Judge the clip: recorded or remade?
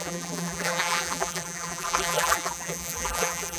remade